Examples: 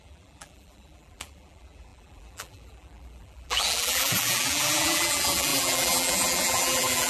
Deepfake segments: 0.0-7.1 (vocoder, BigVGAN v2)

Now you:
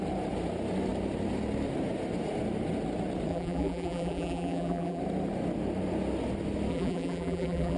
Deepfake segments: 3.3-5.0 (vocoder, BigVGAN v2); 6.7-7.8

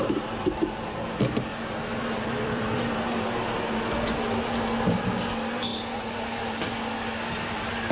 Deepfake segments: 1.5-2.7 (vocoder, BigVGAN v2)

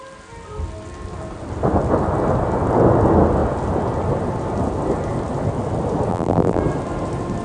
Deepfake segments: 6.1-6.6 (vocoder, BigVGAN v2)

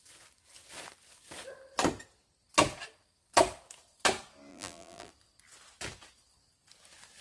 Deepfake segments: 4.5-5.1 (vocoder, BigVGAN v2)